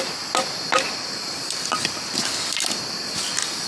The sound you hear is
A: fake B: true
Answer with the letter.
B